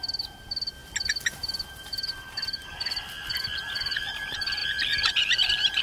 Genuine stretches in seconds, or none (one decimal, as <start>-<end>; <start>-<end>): 0.0-5.8